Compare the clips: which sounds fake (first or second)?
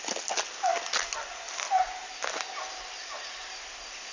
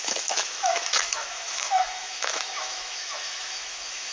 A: second